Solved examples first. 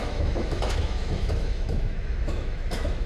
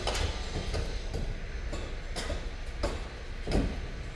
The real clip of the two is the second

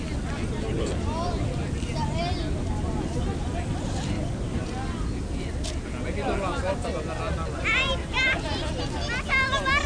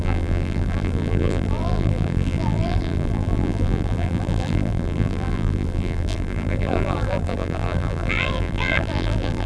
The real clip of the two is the first